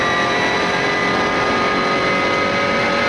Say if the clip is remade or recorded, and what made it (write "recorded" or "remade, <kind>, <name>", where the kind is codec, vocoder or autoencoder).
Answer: recorded